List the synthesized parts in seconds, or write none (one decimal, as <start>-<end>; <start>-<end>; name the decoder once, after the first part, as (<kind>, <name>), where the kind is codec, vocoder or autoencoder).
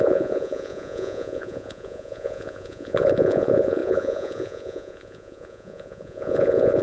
0.0-6.8 (vocoder, Vocos)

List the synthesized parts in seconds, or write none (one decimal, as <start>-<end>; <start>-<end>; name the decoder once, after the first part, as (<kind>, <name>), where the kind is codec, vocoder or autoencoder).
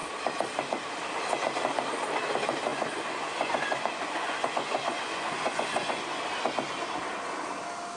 2.7-6.2 (vocoder, Vocos)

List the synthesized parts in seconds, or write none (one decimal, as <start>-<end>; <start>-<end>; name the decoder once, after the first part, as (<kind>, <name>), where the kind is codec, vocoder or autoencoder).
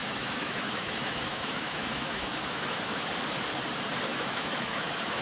0.0-3.1 (autoencoder, DAC-VAE); 4.1-5.2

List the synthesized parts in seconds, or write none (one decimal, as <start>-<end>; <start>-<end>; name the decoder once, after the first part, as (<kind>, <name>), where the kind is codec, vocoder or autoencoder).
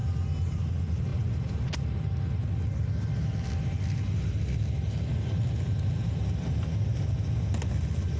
none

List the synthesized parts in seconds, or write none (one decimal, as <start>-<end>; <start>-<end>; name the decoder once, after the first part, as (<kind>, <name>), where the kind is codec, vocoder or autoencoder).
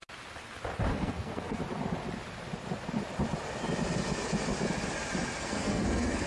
0.9-1.6 (codec, SNAC); 5.4-6.3